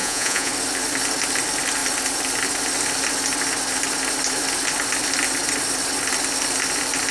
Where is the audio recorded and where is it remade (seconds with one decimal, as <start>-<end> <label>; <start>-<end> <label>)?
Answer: 0.0-0.5 remade; 0.5-7.1 recorded